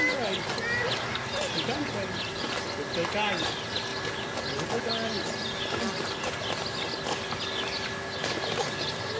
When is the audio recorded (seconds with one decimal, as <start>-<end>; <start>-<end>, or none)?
0.0-9.2